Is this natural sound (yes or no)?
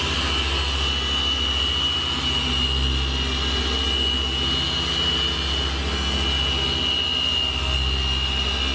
yes